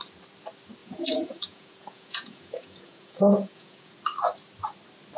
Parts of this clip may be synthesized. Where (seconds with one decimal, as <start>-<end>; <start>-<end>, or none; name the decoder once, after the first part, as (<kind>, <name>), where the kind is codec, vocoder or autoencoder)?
0.8-3.9 (vocoder, Vocos)